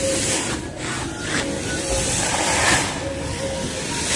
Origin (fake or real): real